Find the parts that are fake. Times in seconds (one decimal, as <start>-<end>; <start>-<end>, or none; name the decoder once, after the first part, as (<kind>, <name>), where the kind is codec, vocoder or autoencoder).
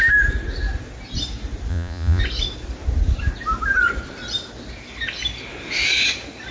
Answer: 1.7-2.2 (vocoder, Vocos)